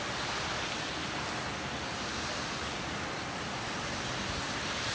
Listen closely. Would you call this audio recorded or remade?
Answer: recorded